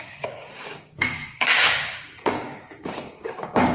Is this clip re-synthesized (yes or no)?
yes